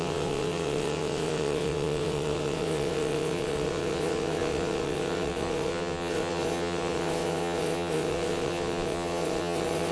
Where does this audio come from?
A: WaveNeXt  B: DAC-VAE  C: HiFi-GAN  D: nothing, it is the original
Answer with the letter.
A